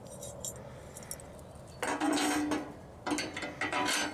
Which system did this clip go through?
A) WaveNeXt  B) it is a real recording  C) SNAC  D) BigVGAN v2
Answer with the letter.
B